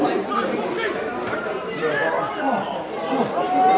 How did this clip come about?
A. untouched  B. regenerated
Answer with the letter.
B